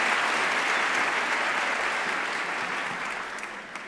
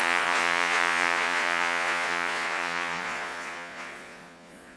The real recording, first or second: first